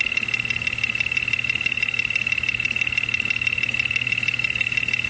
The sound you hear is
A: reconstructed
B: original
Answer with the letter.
B